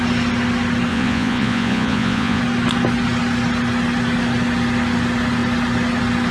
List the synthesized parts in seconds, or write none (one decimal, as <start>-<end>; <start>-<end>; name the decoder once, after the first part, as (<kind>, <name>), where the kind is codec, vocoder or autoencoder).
0.9-2.4 (vocoder, Vocos)